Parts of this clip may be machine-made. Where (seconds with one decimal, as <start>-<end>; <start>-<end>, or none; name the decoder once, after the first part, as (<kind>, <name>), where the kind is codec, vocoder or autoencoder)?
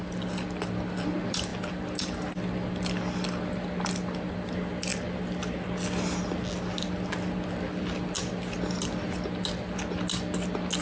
none